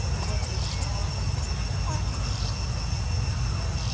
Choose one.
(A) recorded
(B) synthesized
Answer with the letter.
A